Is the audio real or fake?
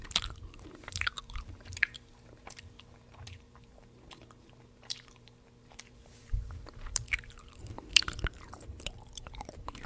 fake